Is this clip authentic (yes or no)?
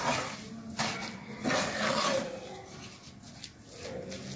yes